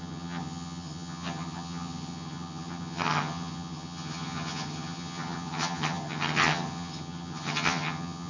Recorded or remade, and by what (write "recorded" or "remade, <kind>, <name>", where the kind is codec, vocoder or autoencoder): remade, vocoder, HiFi-GAN